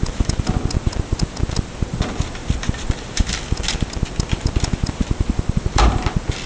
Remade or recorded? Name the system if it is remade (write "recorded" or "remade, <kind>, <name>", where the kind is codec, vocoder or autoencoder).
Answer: recorded